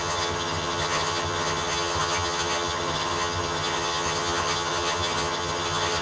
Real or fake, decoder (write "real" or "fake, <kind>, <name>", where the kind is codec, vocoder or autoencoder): fake, vocoder, HiFi-GAN